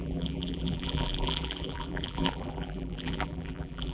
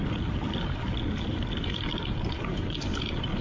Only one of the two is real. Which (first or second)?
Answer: second